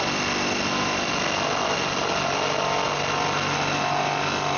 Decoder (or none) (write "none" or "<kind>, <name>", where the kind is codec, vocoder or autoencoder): none